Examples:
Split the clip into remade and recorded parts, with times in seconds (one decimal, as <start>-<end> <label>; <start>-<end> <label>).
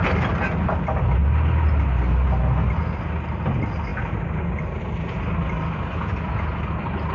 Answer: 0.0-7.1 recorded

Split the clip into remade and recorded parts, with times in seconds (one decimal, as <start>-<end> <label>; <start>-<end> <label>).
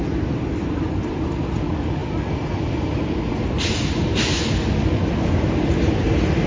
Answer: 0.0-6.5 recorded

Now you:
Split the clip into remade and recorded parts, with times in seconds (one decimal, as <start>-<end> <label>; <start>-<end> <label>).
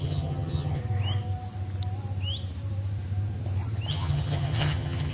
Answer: 0.0-0.8 remade; 0.8-3.9 recorded; 3.9-5.1 remade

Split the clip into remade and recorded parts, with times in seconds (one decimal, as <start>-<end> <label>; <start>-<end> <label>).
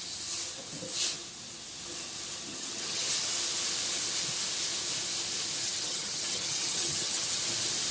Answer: 0.0-2.5 recorded; 2.5-3.1 remade; 3.1-5.6 recorded; 5.6-7.4 remade; 7.4-7.9 recorded